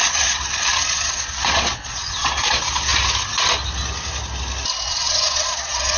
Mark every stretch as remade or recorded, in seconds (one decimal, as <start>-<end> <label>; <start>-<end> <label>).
0.0-2.9 remade; 2.9-4.9 recorded; 4.9-6.0 remade